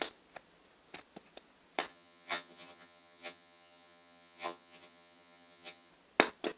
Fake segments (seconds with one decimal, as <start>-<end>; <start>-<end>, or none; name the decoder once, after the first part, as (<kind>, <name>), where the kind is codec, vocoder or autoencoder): 1.9-5.9 (vocoder, HiFi-GAN)

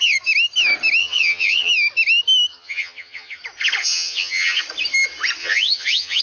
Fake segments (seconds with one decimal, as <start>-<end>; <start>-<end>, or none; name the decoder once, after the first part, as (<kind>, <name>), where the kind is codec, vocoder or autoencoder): 1.0-1.7 (vocoder, HiFi-GAN); 2.5-3.4; 3.8-4.6; 5.4-6.2

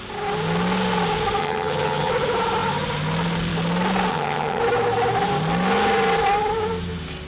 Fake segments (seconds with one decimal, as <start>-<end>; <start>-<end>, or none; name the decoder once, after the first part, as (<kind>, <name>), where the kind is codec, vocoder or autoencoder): 1.4-2.1 (vocoder, HiFi-GAN); 4.1-4.6

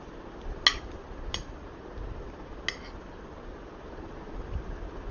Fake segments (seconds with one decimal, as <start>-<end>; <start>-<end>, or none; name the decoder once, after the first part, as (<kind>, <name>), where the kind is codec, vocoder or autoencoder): none

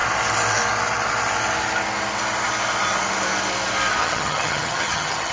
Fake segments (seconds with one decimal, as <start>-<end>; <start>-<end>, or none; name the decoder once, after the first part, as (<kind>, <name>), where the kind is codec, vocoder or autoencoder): 4.0-5.3 (vocoder, HiFi-GAN)

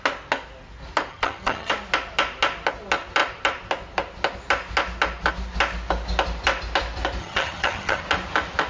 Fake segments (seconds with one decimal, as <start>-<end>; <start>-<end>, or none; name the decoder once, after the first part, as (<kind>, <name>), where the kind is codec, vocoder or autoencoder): 1.1-1.7 (vocoder, HiFi-GAN); 7.2-8.0

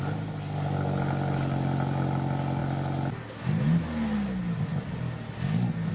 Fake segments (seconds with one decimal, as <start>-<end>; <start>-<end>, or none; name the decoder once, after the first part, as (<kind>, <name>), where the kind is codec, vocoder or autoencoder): none

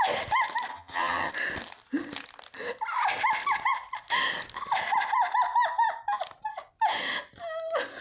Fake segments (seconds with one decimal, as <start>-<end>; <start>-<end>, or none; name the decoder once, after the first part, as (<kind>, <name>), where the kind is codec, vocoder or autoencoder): 0.7-1.3 (vocoder, HiFi-GAN)